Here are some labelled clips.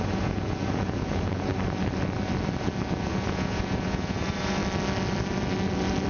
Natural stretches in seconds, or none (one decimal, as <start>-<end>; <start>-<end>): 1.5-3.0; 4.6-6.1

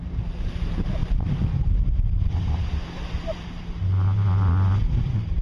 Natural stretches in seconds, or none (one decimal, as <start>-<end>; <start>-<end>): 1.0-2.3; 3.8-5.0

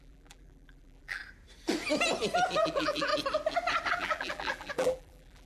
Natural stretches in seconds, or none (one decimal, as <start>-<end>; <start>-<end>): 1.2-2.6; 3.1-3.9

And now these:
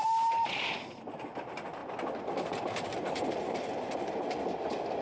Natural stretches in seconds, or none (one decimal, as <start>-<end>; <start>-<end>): 0.0-5.0